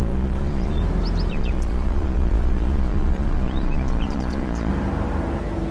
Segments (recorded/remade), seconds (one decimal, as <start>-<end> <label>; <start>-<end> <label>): 0.0-0.8 remade; 0.8-1.3 recorded; 1.3-4.7 remade; 4.7-5.7 recorded